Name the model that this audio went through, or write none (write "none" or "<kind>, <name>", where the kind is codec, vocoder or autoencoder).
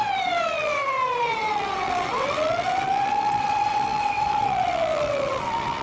vocoder, WaveNeXt